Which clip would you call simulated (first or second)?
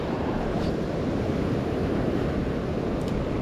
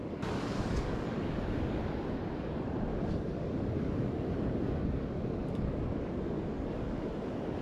second